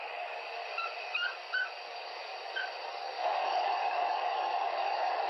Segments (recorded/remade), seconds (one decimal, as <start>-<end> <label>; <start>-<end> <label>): 0.0-0.6 remade; 0.6-1.9 recorded; 1.9-2.3 remade; 2.3-2.9 recorded; 2.9-5.3 remade